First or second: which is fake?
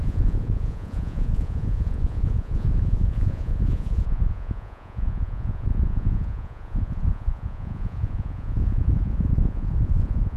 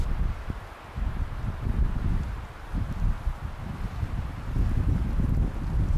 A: first